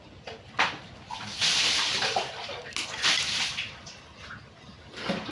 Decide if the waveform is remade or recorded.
recorded